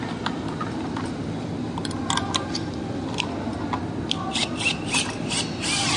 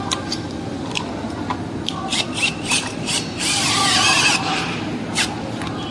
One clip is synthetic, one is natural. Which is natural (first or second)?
first